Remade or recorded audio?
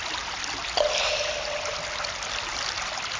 recorded